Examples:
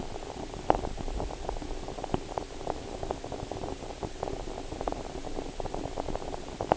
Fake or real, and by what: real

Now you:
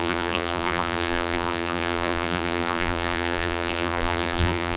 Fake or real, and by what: fake, vocoder, BigVGAN v2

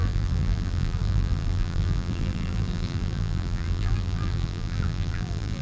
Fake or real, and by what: fake, vocoder, BigVGAN v2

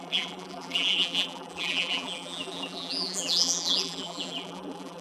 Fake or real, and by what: fake, vocoder, BigVGAN v2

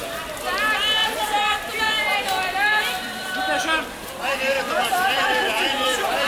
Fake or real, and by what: fake, vocoder, BigVGAN v2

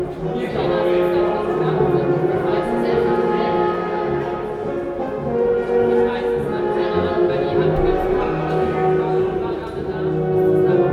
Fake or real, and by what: real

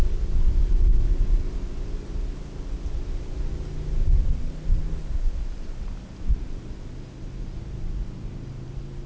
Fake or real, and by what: real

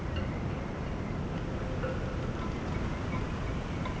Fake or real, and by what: real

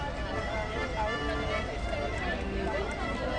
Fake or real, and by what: real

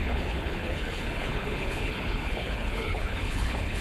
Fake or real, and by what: fake, codec, HILCodec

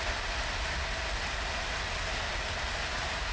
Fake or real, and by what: real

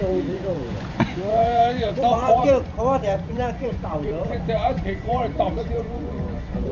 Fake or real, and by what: fake, vocoder, Vocos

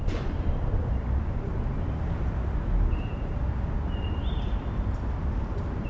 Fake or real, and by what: fake, vocoder, BigVGAN v2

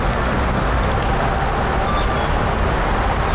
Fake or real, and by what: real